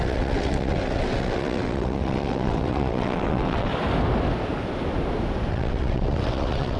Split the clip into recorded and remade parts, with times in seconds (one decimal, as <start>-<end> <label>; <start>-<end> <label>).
0.0-3.7 remade; 3.7-5.5 recorded; 5.5-6.8 remade